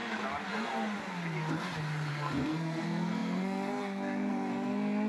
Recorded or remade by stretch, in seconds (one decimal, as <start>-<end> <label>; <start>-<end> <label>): 0.0-2.1 recorded; 2.1-5.1 remade